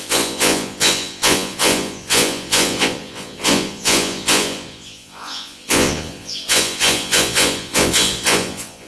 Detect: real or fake fake